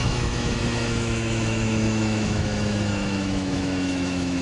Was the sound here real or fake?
fake